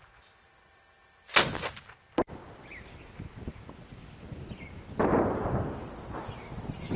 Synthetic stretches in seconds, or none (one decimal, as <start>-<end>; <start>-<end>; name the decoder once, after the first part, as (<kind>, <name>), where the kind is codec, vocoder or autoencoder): none